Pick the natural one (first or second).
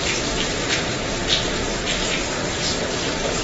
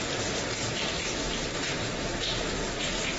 second